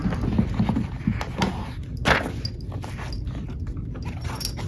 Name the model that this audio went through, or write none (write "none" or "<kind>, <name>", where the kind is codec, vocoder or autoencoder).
none